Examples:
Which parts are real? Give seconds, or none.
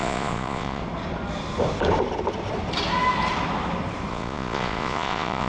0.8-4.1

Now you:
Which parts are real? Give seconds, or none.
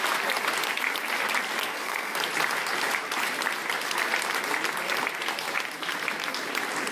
0.0-1.6; 2.2-6.9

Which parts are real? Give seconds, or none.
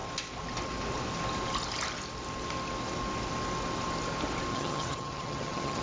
0.0-4.5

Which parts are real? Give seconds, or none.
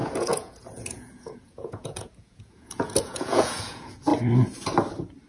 4.1-5.3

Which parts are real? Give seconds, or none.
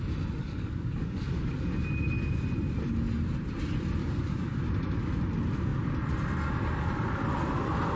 0.0-0.4; 1.5-4.0; 4.5-8.0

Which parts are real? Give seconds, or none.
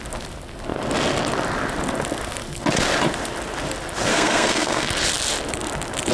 0.0-4.1; 4.9-6.1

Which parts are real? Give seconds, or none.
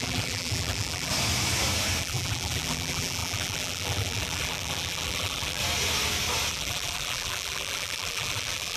1.1-2.0; 5.6-6.5